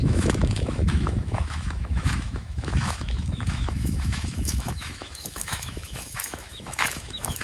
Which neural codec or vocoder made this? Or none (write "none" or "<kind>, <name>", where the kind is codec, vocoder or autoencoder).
autoencoder, DAC-VAE